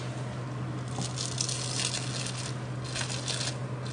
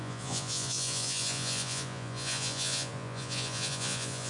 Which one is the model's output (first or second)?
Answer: second